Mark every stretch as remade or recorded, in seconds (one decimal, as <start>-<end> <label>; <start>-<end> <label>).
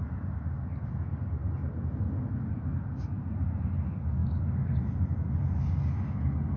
0.0-6.6 recorded